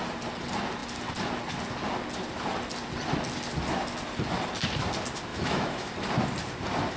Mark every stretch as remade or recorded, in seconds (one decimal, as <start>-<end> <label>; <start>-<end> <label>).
0.0-5.3 recorded; 5.3-5.9 remade; 5.9-7.0 recorded